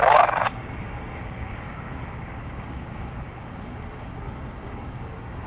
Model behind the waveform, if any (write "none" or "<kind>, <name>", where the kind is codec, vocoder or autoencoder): codec, DAC